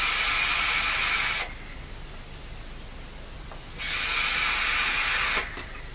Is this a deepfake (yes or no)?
no